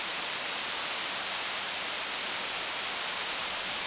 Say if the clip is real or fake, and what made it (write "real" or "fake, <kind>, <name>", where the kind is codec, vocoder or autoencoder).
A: real